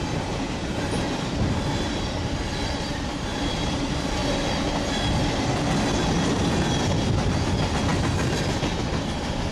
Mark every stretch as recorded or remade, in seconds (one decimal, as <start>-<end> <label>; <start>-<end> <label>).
0.0-9.5 recorded